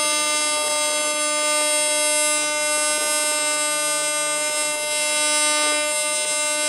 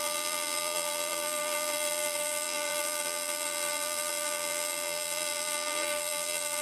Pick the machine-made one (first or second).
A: second